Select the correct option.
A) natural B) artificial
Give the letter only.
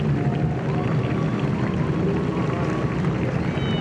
A